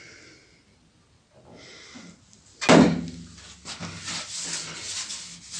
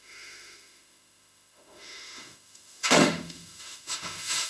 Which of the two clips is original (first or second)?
first